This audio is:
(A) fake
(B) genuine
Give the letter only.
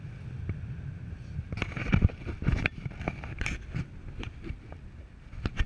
A